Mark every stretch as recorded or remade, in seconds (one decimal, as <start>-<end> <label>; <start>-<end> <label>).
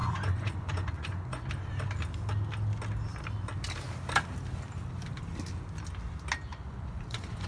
0.0-1.5 remade; 1.5-6.5 recorded; 6.5-7.5 remade